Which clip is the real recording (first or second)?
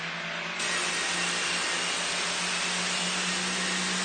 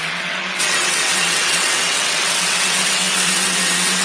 first